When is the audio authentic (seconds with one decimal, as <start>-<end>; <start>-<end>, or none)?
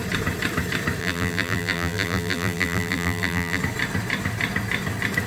0.0-1.0; 3.6-5.3